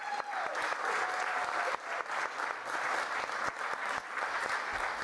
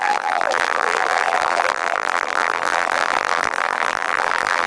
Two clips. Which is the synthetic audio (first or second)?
second